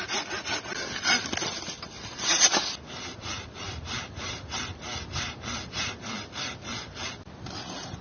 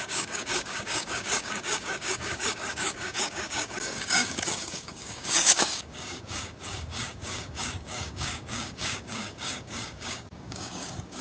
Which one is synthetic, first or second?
second